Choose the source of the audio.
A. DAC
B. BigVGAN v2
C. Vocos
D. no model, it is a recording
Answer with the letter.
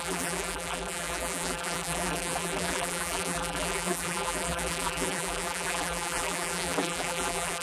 B